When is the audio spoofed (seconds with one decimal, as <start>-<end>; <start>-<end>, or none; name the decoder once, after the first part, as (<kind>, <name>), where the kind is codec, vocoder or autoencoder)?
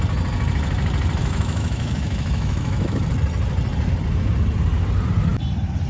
1.2-3.0 (autoencoder, DAC-VAE)